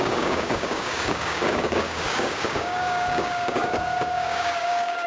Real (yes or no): no